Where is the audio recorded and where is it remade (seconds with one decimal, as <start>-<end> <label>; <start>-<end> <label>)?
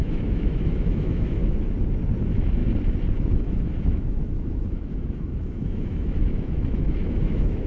0.0-1.4 remade; 1.4-2.2 recorded; 2.2-2.6 remade; 2.6-3.1 recorded; 3.1-7.7 remade